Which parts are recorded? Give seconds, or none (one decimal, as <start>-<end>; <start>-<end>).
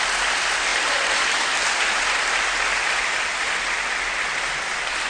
0.0-5.1